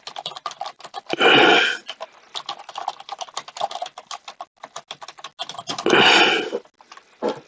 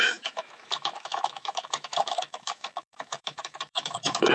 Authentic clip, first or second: first